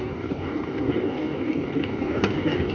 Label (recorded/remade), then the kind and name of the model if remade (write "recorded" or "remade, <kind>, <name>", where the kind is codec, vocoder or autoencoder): remade, codec, DAC